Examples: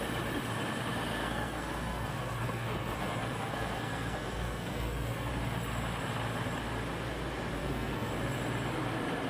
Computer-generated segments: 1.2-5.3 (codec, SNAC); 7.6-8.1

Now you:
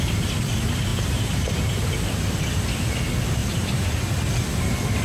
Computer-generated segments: 0.9-2.4 (vocoder, BigVGAN v2); 3.4-4.0

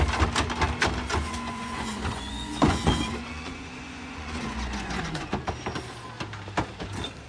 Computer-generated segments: 1.1-5.3 (vocoder, Vocos)